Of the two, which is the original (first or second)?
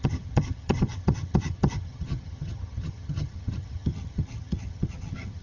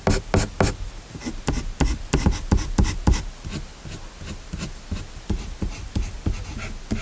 second